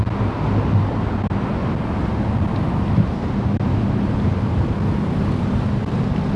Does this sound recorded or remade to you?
recorded